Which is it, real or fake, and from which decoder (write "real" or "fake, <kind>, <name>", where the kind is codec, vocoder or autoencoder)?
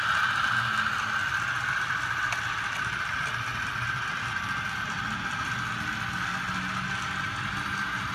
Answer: real